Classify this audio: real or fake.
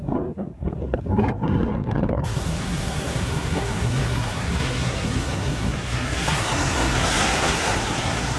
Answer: fake